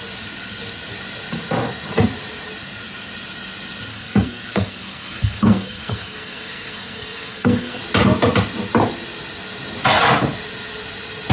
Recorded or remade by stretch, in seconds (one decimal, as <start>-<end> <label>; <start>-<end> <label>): 0.0-3.9 recorded; 3.9-7.8 remade; 7.8-11.3 recorded